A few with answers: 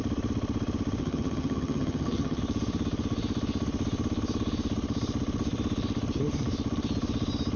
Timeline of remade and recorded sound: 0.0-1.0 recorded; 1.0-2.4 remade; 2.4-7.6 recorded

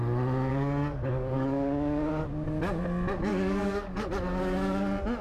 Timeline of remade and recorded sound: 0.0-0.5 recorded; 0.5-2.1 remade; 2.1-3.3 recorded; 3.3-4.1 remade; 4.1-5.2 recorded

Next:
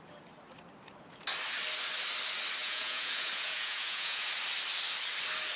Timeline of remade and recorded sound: 0.0-2.6 recorded; 2.6-4.3 remade; 4.3-5.6 recorded

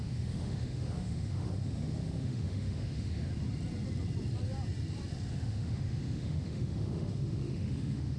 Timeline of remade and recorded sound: 0.0-3.3 remade; 3.3-5.3 recorded; 5.3-8.2 remade